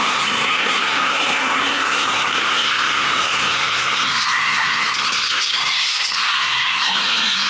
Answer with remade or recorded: remade